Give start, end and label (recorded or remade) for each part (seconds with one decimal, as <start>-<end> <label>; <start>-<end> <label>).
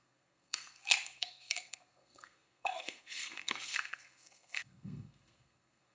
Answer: 0.0-5.9 remade